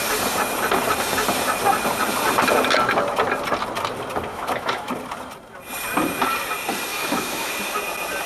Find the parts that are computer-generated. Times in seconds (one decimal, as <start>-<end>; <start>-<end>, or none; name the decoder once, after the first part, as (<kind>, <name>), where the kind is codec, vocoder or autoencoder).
4.3-4.9 (autoencoder, DAC-VAE); 6.9-7.5